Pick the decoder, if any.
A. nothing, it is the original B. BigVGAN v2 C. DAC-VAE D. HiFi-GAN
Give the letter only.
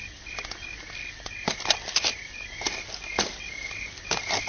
A